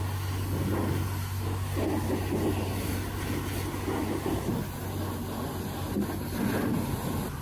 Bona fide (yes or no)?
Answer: yes